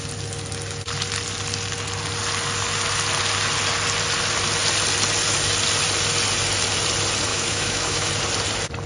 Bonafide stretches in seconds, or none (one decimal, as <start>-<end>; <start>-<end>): 0.0-7.3; 8.1-8.9